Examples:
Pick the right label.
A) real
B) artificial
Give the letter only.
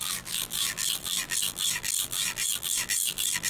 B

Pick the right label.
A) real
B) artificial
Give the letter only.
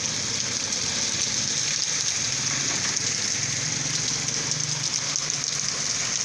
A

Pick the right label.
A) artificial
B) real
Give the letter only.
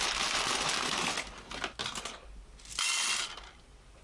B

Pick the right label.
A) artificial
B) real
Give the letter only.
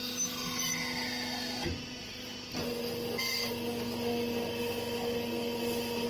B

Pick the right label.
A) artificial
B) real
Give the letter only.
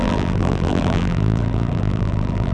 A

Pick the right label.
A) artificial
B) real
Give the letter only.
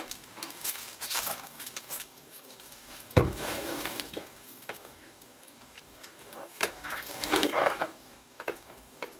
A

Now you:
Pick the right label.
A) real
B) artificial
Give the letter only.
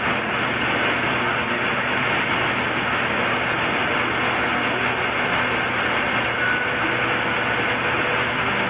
A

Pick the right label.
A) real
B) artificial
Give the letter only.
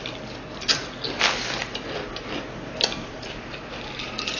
A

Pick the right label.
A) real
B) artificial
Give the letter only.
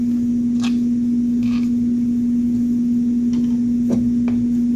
A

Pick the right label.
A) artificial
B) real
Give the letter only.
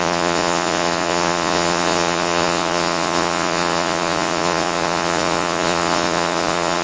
A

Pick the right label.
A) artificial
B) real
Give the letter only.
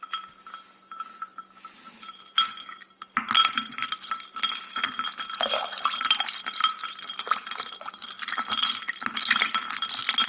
B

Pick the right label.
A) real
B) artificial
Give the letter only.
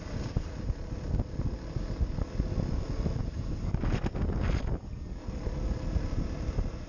A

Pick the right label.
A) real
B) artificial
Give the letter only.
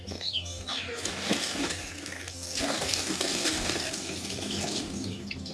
B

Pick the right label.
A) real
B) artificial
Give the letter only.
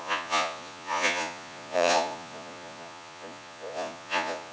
B